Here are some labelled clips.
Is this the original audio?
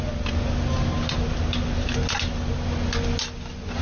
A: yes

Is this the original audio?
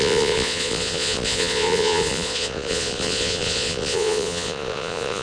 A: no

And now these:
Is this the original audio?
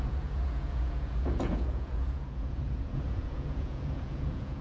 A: no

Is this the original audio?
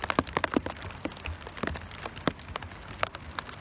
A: yes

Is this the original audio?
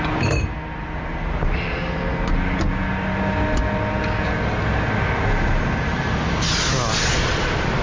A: yes